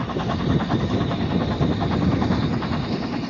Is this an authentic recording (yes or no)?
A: yes